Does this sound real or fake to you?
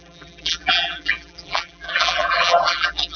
fake